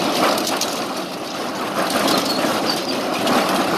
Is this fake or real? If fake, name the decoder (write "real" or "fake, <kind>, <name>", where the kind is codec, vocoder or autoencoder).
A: real